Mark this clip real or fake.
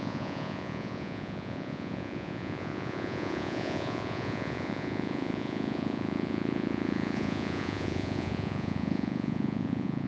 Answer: fake